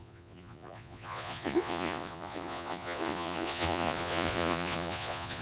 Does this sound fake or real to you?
fake